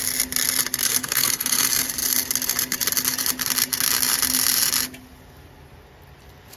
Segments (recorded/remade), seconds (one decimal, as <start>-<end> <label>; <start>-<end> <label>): 0.0-0.8 recorded; 0.8-1.6 remade; 1.6-6.6 recorded